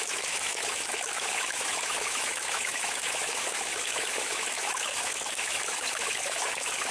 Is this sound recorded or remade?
remade